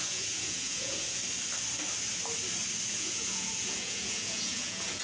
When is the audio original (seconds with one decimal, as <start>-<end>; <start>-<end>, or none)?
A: 1.2-2.9